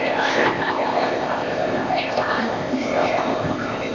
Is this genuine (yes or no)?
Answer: no